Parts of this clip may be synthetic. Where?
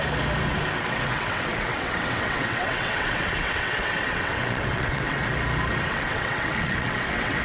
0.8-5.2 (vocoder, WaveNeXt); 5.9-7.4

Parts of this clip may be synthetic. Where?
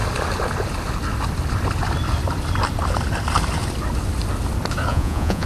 4.9-5.5 (vocoder, Vocos)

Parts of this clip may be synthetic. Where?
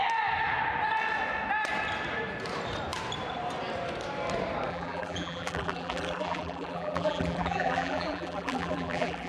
4.7-9.3 (vocoder, BigVGAN v2)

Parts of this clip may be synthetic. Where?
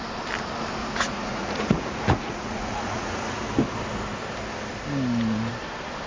0.8-3.4 (vocoder, Vocos)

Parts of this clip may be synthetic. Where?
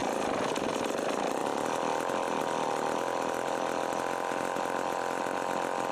none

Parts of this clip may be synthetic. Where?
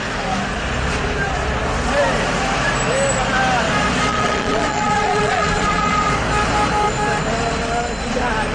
4.1-6.1 (vocoder, Vocos)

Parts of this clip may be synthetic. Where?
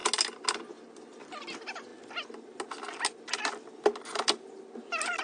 none